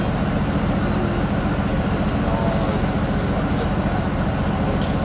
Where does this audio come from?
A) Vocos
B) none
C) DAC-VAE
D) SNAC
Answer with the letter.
B